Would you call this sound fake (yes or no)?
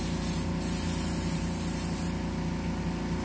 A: no